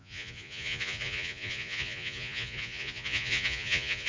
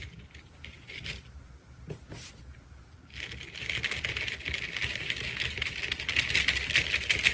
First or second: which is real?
second